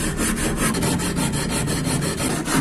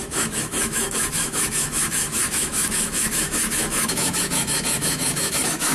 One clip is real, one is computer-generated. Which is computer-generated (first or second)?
second